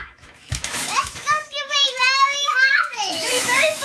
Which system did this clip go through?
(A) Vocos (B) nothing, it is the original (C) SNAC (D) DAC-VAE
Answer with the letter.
D